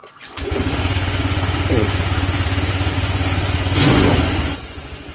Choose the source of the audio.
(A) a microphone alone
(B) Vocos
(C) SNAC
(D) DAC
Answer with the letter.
B